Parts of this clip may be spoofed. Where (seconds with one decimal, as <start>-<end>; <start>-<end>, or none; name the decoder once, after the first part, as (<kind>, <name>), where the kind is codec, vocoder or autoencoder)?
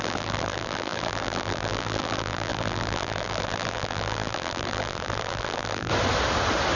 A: 0.0-5.9 (vocoder, BigVGAN v2)